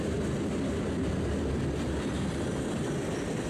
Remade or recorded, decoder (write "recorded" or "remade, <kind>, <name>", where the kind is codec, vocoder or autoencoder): recorded